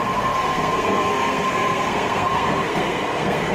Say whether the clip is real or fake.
fake